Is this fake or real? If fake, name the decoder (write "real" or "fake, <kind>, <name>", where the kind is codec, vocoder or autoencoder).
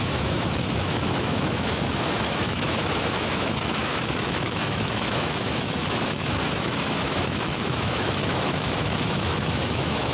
fake, autoencoder, DAC-VAE